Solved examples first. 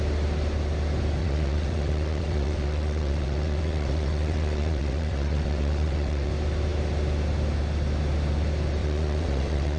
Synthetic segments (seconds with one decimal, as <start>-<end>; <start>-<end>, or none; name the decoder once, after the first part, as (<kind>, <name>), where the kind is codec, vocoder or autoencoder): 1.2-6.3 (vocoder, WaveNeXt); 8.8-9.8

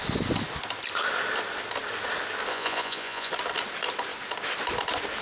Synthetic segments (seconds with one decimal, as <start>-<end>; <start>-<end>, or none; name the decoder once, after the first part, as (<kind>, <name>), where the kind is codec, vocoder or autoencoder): 2.5-3.3 (vocoder, Vocos)

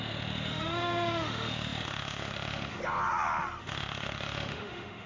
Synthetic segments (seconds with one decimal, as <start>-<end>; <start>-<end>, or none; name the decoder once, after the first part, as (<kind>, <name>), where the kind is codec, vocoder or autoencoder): 0.0-2.8 (autoencoder, DAC-VAE); 3.6-5.1